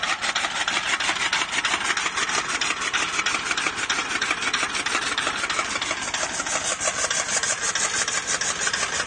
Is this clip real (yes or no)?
yes